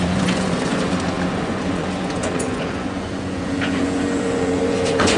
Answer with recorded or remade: remade